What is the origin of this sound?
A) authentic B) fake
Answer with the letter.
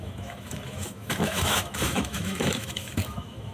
B